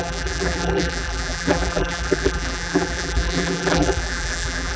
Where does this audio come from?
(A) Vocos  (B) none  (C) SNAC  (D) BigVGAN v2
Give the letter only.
D